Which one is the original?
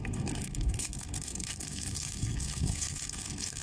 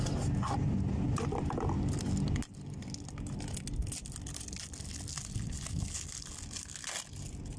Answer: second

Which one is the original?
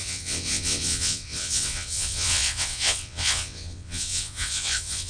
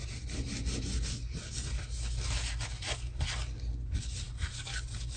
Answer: second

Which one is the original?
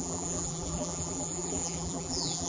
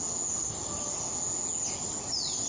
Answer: second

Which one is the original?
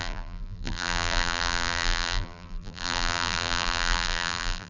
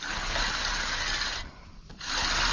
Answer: second